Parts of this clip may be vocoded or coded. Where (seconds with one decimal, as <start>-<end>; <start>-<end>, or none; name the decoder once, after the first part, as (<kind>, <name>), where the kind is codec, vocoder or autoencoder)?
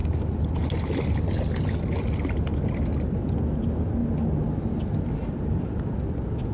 none